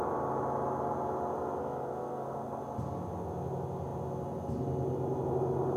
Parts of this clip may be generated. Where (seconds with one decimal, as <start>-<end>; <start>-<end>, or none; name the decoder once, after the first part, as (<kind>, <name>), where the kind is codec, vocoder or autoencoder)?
1.6-2.6 (codec, SNAC)